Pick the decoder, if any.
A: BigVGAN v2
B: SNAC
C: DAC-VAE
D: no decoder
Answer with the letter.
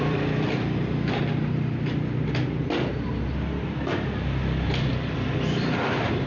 A